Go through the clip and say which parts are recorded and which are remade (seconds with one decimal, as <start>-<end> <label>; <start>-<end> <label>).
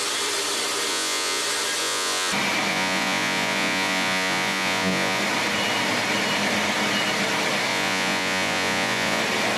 0.0-0.9 recorded; 0.9-1.4 remade; 1.4-1.8 recorded; 1.8-2.3 remade; 2.3-2.7 recorded; 2.7-5.2 remade; 5.2-7.7 recorded; 7.7-9.2 remade; 9.2-9.6 recorded